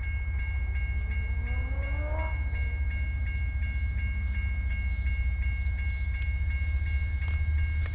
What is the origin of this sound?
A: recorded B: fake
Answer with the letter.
A